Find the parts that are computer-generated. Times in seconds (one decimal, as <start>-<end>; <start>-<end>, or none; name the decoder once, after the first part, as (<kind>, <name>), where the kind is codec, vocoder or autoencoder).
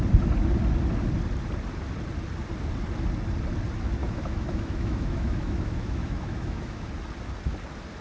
4.0-6.9 (autoencoder, DAC-VAE)